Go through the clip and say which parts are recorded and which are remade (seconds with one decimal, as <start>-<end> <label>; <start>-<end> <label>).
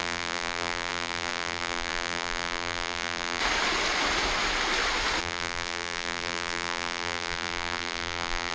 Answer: 0.0-3.4 remade; 3.4-5.2 recorded; 5.2-8.5 remade